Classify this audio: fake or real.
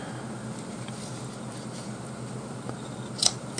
real